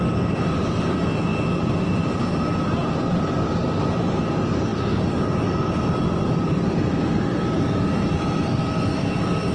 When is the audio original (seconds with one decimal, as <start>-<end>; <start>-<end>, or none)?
0.0-9.5